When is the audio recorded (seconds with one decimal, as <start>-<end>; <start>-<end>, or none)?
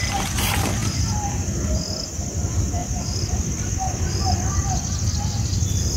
0.0-2.8; 3.7-6.0